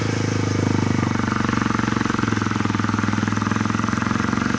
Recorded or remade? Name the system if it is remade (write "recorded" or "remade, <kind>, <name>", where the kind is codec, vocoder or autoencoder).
recorded